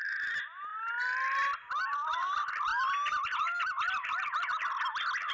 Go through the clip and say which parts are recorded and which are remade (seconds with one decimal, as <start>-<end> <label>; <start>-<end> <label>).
0.0-5.3 recorded